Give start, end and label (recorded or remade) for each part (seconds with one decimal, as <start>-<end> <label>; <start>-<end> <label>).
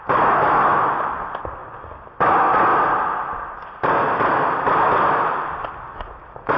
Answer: 0.0-6.6 recorded